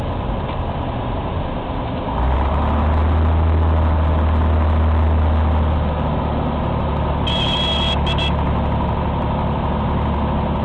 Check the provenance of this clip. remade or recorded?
recorded